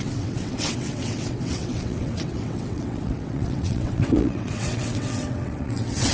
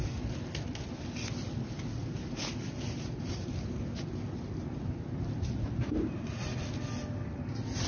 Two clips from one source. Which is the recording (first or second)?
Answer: second